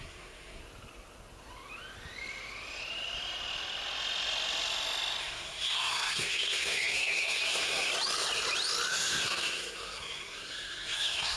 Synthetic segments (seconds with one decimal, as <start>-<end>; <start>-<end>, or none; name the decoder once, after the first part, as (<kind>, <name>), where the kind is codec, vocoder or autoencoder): 0.0-0.6 (codec, SNAC); 5.2-7.9; 8.9-11.4